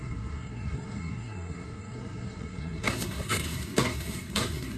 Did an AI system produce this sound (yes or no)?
yes